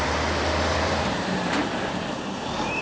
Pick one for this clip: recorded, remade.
remade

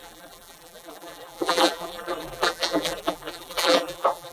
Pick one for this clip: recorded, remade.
remade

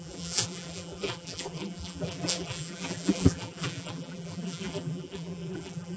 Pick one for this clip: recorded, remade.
remade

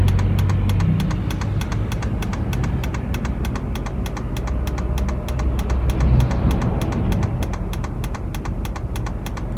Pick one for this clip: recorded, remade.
recorded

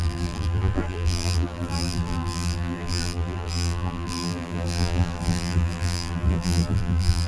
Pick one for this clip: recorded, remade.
remade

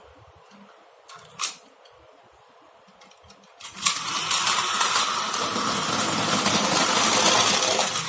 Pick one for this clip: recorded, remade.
recorded